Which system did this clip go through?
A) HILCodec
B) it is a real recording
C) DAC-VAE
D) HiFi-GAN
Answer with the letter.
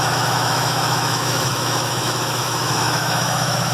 C